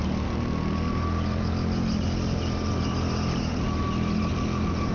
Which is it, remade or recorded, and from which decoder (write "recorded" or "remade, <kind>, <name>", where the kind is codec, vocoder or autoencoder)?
recorded